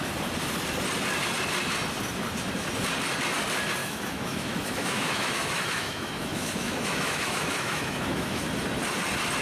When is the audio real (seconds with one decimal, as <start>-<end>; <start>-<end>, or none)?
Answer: 0.0-3.8; 8.4-9.4

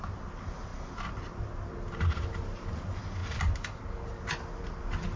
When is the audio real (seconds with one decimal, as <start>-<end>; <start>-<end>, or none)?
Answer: 0.0-5.2

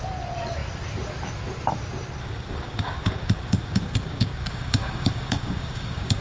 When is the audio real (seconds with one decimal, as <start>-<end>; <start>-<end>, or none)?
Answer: 0.0-2.2